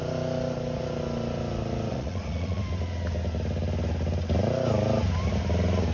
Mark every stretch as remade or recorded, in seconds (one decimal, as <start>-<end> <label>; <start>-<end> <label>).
0.0-1.9 recorded; 1.9-2.6 remade; 2.6-5.9 recorded